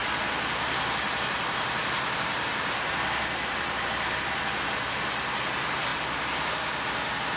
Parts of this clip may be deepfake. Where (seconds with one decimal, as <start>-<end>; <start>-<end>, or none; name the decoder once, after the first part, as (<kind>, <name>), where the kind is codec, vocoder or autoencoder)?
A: none